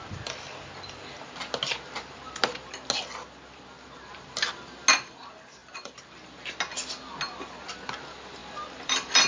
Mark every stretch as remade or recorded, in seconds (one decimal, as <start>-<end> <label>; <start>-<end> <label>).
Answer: 0.0-5.6 recorded; 5.6-6.4 remade; 6.4-8.4 recorded; 8.4-9.3 remade